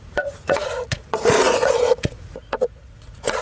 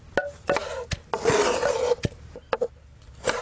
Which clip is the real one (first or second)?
second